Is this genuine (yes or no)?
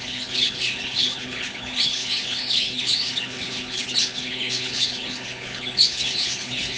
no